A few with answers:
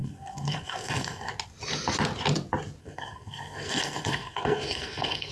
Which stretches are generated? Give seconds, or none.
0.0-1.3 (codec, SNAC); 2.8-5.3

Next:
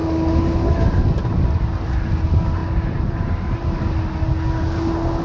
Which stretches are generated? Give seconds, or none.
2.6-3.9 (vocoder, BigVGAN v2)

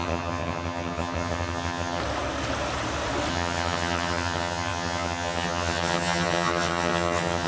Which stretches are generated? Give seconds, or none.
0.0-2.0 (vocoder, HiFi-GAN); 3.3-7.5

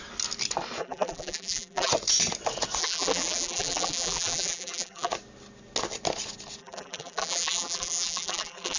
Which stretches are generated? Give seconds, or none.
0.8-1.9 (vocoder, BigVGAN v2); 2.8-5.1; 6.6-8.8

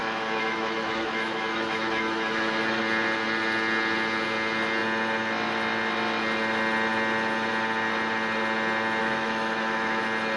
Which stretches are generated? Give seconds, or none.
0.0-2.8 (autoencoder, DAC-VAE); 9.0-10.0

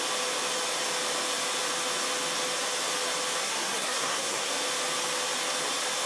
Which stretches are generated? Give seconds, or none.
3.4-4.5 (codec, SNAC)

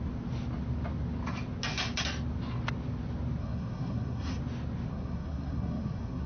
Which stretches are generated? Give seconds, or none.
3.4-4.4 (codec, SNAC); 4.9-6.3

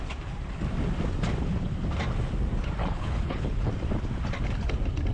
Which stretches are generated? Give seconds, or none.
2.8-3.7 (codec, HILCodec)